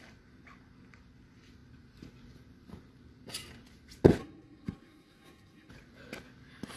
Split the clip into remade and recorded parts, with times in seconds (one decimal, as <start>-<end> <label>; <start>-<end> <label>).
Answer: 0.0-4.2 recorded; 4.2-5.7 remade; 5.7-6.8 recorded